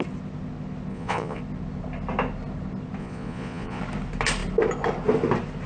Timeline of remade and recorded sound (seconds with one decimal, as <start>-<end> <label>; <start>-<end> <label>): 0.0-0.9 recorded; 0.9-1.4 remade; 1.4-3.0 recorded; 3.0-3.8 remade; 3.8-5.7 recorded